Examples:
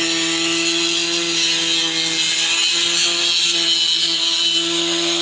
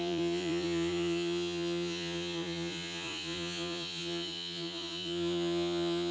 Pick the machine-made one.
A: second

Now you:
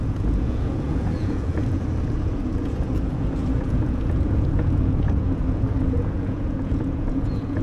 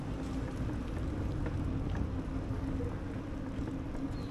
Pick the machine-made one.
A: first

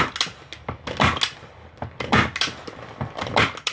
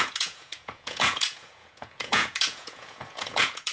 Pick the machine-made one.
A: second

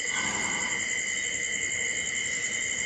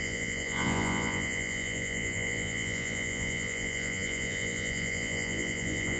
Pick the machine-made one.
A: second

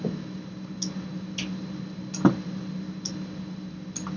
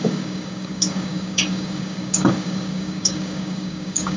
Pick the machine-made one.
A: second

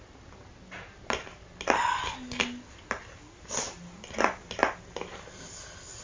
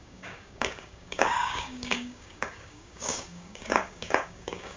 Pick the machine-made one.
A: second